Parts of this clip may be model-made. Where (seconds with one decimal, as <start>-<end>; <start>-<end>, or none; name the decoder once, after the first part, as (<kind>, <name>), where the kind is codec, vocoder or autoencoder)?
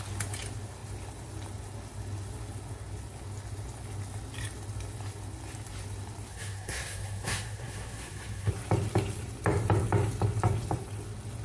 6.3-8.5 (codec, SNAC)